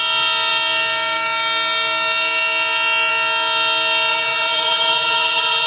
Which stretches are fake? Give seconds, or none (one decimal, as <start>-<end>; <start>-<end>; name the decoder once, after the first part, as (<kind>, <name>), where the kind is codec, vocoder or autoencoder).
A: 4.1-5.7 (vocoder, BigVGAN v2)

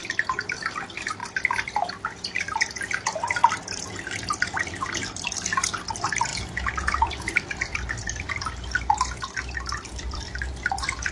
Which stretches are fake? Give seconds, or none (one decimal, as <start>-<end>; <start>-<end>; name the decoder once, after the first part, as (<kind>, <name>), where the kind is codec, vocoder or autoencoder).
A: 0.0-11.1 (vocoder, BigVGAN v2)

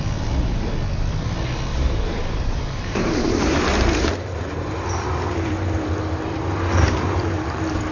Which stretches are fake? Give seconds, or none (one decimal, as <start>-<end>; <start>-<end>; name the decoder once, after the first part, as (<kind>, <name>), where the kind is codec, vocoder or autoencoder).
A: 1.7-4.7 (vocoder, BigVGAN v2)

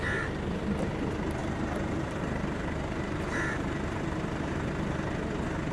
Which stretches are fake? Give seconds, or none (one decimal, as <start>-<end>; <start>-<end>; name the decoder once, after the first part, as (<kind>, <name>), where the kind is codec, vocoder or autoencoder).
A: 1.4-4.7 (vocoder, BigVGAN v2)